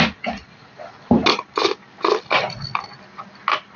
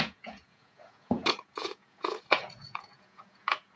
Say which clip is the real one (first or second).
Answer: first